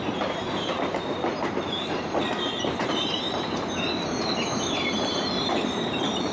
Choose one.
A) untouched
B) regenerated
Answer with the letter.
B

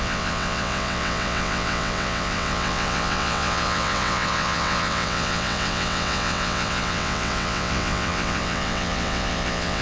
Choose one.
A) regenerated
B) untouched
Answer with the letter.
A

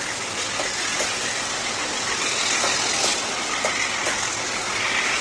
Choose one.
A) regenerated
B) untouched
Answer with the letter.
B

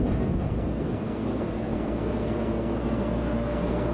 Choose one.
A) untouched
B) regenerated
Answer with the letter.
B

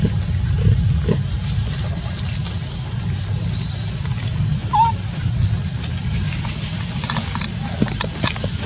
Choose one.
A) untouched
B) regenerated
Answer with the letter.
A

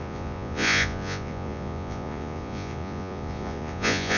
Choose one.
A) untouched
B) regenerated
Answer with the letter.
B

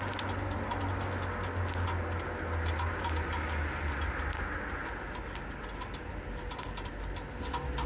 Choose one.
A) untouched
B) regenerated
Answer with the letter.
A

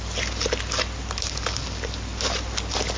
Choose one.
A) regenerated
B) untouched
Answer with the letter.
B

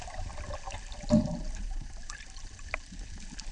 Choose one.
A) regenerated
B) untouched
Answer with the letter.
B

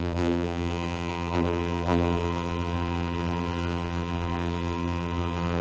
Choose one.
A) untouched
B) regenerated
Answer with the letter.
B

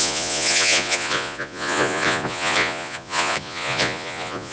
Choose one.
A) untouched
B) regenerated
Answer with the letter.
B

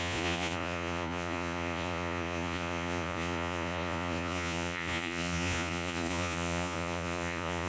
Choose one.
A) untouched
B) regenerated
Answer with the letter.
B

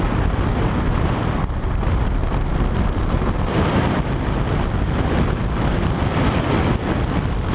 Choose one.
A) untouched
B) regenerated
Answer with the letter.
A